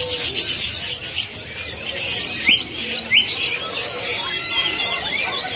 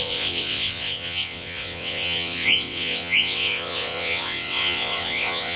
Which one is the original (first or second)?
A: first